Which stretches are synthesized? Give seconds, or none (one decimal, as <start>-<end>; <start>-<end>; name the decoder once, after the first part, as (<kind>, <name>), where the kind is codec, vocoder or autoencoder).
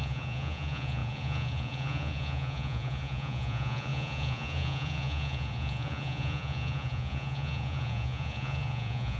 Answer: 0.0-9.2 (vocoder, Vocos)